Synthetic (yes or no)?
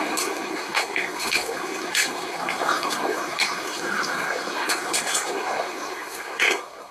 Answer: yes